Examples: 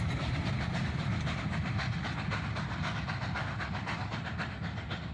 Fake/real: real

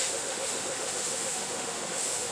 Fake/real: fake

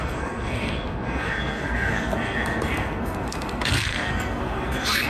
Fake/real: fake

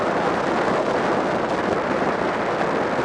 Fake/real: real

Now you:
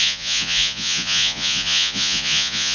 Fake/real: fake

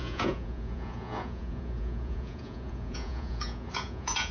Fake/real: fake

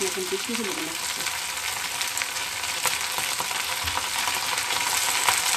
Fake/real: real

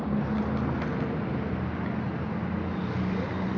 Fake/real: real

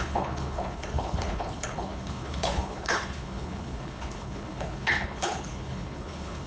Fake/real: fake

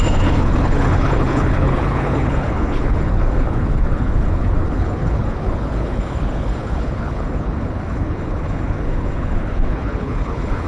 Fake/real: fake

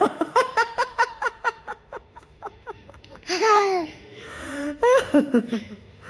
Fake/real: fake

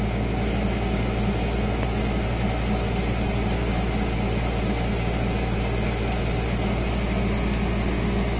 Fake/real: real